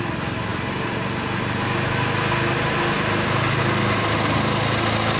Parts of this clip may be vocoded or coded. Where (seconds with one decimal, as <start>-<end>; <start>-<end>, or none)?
none